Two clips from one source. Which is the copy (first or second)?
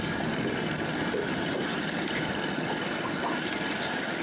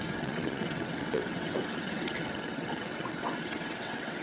second